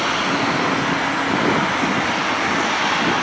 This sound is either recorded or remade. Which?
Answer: recorded